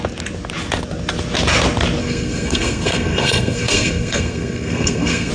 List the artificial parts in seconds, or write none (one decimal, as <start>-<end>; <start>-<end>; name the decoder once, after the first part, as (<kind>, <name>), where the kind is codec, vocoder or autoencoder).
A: 2.0-5.3 (codec, SNAC)